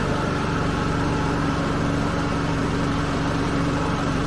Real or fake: fake